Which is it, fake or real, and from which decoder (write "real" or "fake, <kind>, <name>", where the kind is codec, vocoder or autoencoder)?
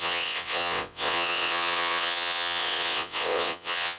fake, vocoder, WaveNeXt